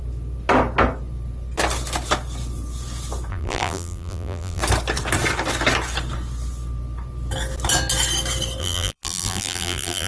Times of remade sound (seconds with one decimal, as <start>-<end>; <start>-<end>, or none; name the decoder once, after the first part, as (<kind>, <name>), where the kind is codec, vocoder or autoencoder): 3.3-4.6 (vocoder, BigVGAN v2); 8.6-10.1